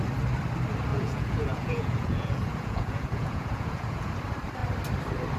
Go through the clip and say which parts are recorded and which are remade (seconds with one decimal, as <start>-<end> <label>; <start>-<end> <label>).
0.0-0.9 recorded; 0.9-4.1 remade; 4.1-5.4 recorded